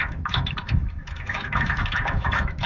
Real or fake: fake